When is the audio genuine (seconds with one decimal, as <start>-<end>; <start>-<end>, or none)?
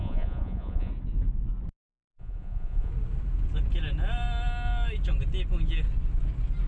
0.9-1.9; 2.9-6.7